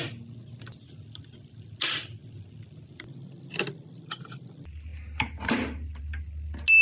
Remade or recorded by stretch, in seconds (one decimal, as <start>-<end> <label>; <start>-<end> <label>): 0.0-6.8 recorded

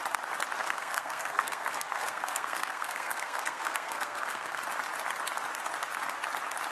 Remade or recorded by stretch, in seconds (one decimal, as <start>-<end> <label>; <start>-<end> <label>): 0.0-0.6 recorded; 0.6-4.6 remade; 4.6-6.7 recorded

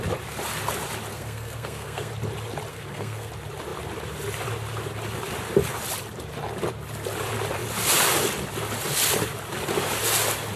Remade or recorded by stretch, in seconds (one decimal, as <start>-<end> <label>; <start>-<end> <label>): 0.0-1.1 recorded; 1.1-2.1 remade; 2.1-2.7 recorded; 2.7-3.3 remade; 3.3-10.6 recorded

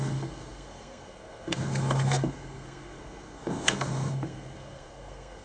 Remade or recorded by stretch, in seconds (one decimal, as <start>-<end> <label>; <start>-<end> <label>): 0.0-5.4 remade

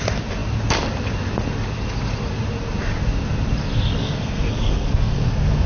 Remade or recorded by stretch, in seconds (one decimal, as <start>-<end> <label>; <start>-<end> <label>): 0.0-4.0 recorded; 4.0-5.7 remade

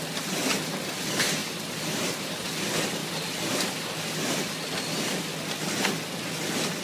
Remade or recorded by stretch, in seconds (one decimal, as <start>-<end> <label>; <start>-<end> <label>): 0.0-6.8 recorded

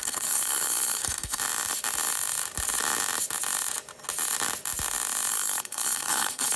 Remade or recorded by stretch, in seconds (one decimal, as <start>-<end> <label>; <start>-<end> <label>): 0.0-1.4 remade; 1.4-5.3 recorded; 5.3-6.6 remade